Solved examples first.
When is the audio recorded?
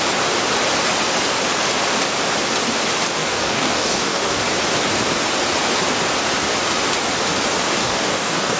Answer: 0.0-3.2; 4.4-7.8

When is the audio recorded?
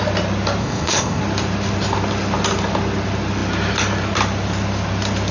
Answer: 0.0-0.6; 1.2-5.3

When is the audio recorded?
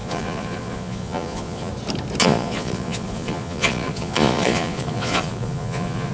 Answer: 1.7-2.2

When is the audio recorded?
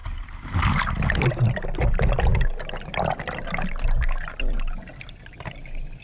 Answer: 0.0-6.0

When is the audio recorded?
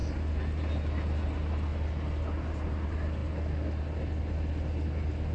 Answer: 0.0-5.3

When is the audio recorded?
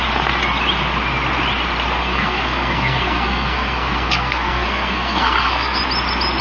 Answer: 0.0-2.0; 5.8-6.4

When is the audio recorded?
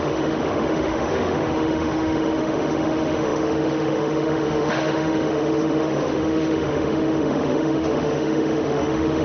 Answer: none